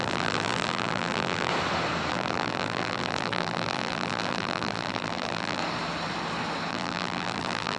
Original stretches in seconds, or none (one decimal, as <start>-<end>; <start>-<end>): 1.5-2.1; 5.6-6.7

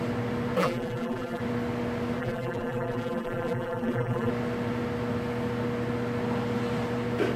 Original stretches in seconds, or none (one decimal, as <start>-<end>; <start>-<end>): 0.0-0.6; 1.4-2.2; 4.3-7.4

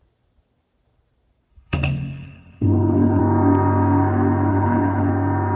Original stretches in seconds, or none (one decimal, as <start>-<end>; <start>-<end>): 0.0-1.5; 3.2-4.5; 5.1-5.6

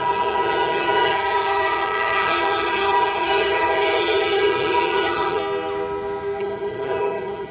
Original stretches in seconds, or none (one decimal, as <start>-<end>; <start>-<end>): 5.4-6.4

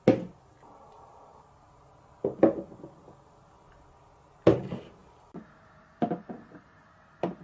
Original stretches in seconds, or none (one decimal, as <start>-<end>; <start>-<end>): 0.0-7.4

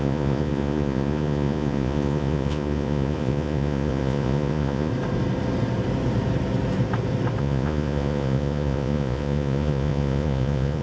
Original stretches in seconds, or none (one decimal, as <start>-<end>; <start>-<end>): 4.9-7.4

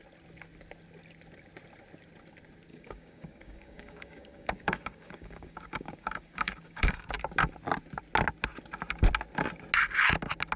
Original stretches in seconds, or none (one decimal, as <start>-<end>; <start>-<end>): 0.0-2.7; 7.1-10.6

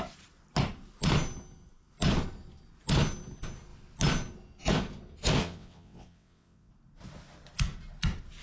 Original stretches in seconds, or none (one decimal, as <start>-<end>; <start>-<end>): 0.0-5.4; 6.7-8.4